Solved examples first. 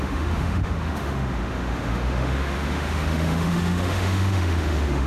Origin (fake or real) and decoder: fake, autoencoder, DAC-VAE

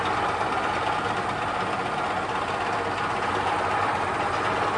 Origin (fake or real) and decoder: real